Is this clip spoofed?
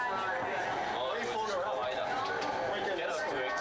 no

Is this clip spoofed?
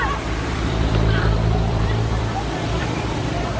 yes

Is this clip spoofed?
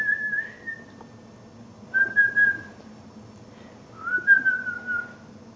no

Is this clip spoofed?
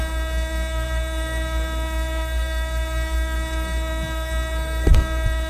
yes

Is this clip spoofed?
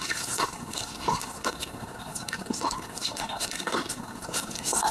yes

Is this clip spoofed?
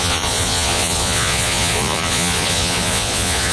yes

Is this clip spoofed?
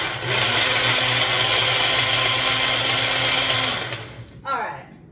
no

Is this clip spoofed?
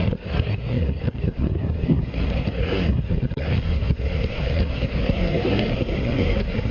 yes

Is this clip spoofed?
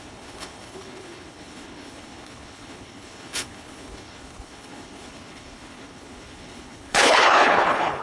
yes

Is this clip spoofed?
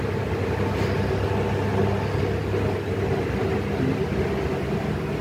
no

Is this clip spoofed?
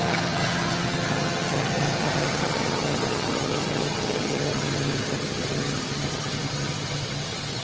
yes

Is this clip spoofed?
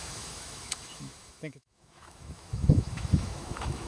yes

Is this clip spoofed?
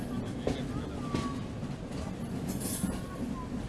no